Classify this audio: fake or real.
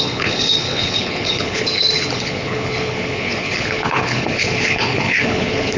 fake